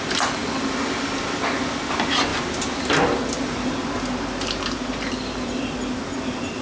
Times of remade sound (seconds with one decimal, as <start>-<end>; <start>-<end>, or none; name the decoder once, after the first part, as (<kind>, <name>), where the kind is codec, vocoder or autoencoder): none